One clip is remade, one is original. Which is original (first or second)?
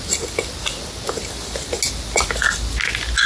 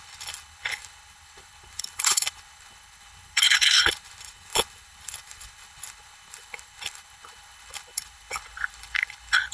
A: first